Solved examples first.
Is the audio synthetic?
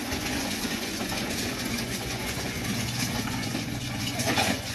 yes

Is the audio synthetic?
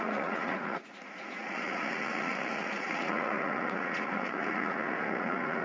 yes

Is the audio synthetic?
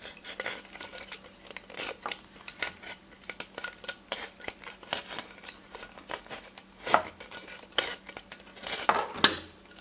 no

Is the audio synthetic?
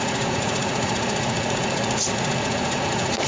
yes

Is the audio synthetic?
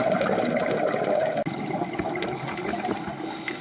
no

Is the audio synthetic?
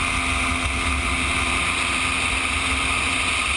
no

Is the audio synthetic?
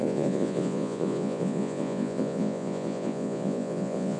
yes